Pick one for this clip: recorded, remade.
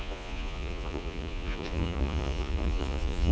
remade